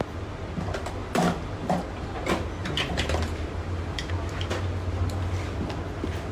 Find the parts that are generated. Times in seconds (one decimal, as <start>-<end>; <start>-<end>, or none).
1.0-1.8; 2.6-4.1